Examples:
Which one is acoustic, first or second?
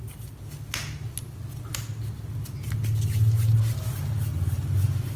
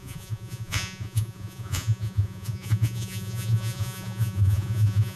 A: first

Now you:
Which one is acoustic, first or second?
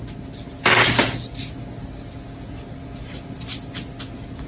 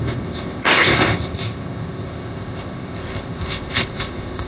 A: first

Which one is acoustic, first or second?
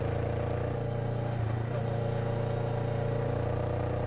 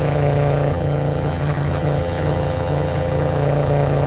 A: first